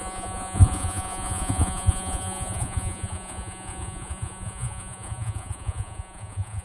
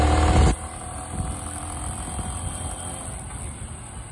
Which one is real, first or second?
second